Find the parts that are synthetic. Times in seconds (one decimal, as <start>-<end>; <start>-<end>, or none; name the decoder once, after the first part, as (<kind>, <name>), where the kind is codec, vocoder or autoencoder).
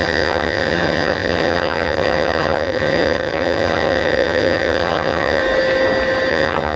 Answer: 0.0-5.4 (vocoder, HiFi-GAN); 6.3-6.8